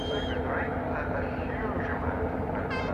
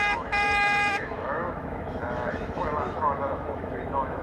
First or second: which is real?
first